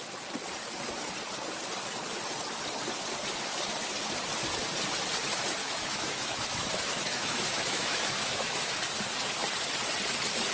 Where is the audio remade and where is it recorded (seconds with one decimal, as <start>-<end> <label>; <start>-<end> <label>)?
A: 0.0-5.6 recorded; 5.6-8.8 remade; 8.8-10.5 recorded